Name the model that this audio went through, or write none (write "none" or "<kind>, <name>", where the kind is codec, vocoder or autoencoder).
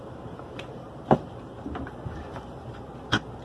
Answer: vocoder, BigVGAN v2